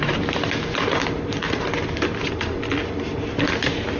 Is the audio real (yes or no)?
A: yes